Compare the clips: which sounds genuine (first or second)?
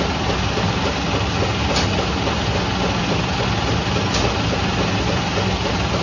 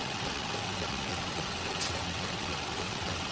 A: first